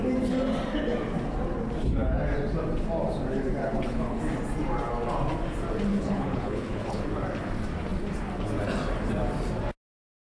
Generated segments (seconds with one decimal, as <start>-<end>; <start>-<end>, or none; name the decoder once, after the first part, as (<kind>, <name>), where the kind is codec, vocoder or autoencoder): 3.6-4.2 (codec, HILCodec); 5.9-7.0